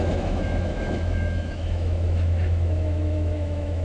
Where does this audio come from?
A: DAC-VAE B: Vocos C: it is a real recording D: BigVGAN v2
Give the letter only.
A